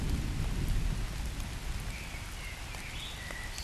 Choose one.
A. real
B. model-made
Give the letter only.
A